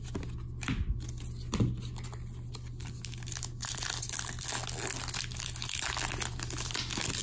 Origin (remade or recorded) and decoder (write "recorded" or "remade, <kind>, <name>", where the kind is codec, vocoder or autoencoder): recorded